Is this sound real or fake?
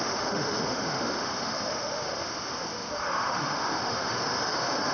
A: fake